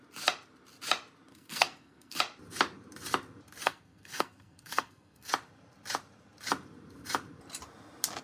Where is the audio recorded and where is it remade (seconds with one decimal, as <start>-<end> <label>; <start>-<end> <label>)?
0.0-1.3 recorded; 1.3-2.2 remade; 2.2-3.6 recorded; 3.6-5.3 remade; 5.3-8.2 recorded